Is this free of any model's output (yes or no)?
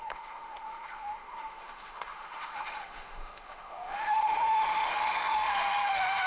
no